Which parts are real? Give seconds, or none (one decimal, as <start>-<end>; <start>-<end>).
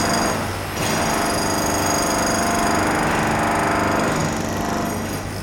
0.0-5.4